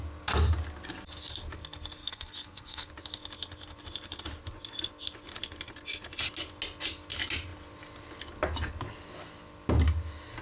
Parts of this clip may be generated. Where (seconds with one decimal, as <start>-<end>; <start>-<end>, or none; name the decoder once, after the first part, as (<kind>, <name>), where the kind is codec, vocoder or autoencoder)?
2.0-2.9 (codec, SNAC)